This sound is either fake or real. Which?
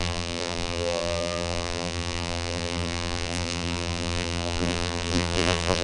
fake